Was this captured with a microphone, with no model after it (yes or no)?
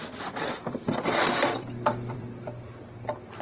no